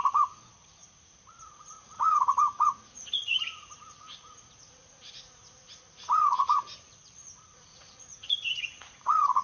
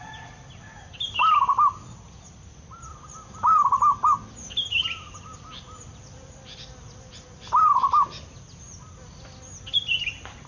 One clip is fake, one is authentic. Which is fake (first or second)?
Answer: first